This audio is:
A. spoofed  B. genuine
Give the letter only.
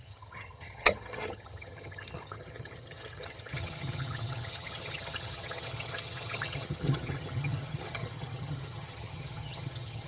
A